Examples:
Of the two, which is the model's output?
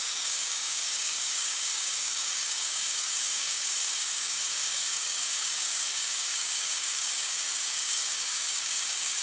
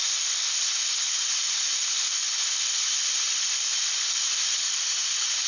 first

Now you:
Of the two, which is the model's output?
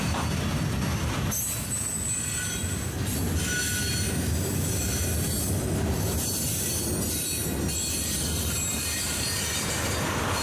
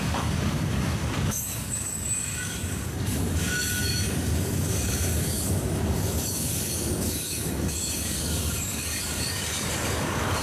second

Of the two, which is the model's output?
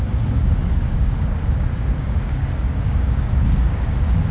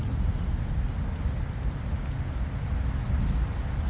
first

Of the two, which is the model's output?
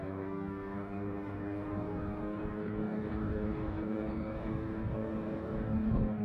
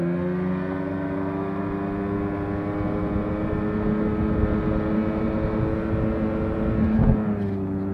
first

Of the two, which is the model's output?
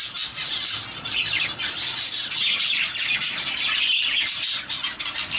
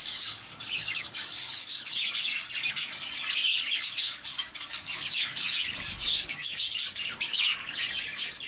second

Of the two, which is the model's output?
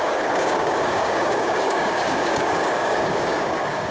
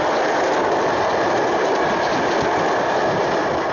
first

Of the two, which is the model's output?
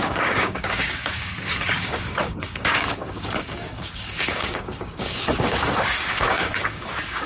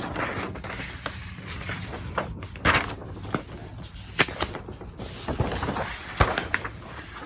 first